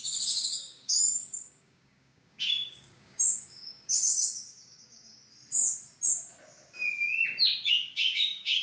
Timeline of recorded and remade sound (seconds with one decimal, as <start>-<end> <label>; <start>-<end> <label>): 0.0-5.2 remade; 5.2-7.7 recorded; 7.7-8.6 remade